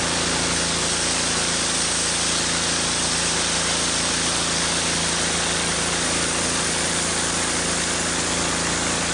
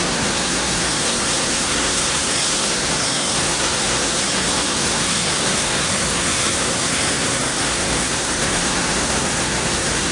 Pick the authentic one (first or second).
first